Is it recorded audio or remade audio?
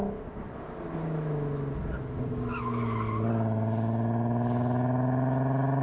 recorded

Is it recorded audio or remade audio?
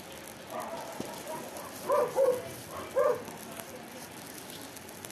recorded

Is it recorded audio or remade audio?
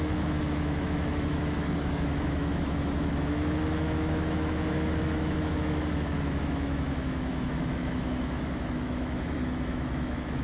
remade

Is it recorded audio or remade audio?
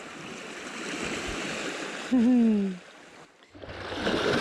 recorded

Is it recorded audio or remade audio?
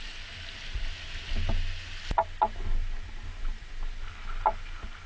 recorded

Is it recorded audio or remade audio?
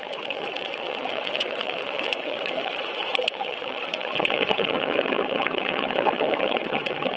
remade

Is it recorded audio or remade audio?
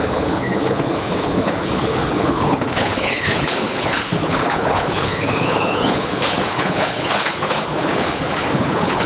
remade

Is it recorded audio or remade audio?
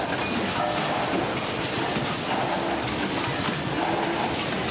recorded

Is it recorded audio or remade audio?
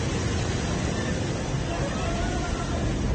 recorded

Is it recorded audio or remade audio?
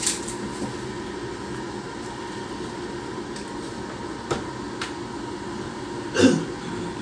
recorded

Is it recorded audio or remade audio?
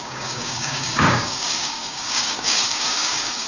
remade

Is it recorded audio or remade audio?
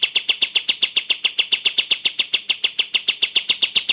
recorded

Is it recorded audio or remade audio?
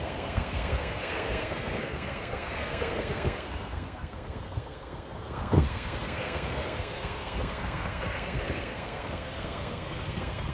remade